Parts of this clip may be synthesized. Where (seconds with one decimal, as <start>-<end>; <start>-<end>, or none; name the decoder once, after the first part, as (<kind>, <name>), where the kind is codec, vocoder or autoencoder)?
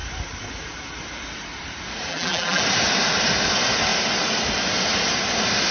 2.1-2.6 (vocoder, BigVGAN v2)